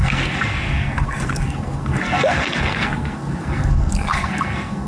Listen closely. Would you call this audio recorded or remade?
remade